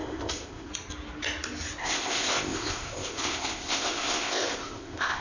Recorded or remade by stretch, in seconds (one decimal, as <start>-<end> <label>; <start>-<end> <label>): 0.0-0.7 remade; 0.7-1.8 recorded; 1.8-5.2 remade

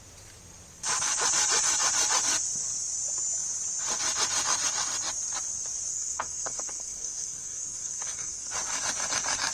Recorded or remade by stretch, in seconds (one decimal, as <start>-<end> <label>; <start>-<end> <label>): 0.0-5.9 recorded; 5.9-8.5 remade; 8.5-9.5 recorded